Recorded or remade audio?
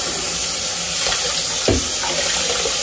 recorded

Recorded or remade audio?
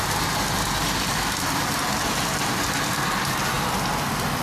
recorded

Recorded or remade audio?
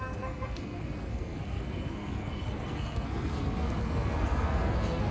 remade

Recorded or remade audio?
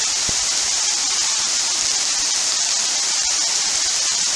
recorded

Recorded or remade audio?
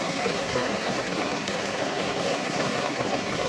remade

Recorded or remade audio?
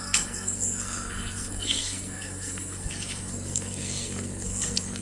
remade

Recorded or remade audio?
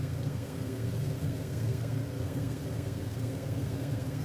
remade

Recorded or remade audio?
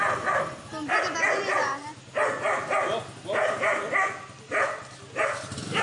recorded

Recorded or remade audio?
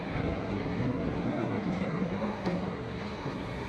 remade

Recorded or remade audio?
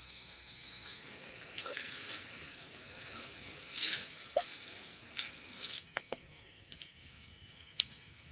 remade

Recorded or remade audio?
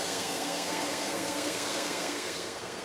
remade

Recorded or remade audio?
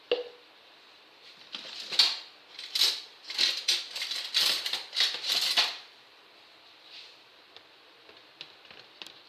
recorded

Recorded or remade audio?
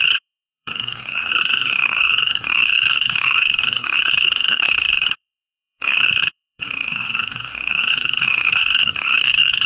remade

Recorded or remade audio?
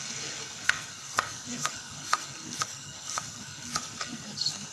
remade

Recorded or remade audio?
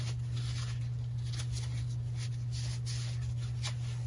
recorded